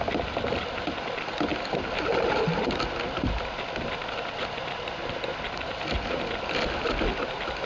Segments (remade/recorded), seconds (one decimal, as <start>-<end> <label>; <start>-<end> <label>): 0.0-7.7 recorded